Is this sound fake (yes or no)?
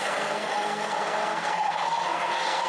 yes